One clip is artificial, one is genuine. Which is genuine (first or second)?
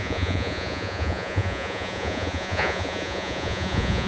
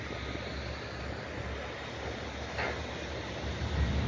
second